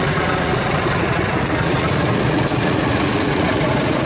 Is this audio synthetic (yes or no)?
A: yes